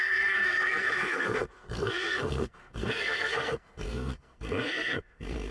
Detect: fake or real fake